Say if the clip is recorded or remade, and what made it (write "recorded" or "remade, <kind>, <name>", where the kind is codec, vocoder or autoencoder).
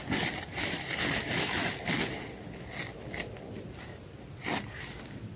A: recorded